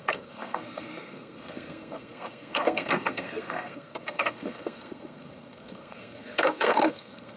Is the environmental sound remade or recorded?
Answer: remade